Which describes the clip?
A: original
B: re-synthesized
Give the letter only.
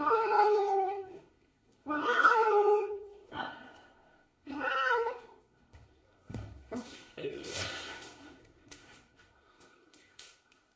B